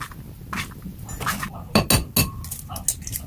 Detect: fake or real real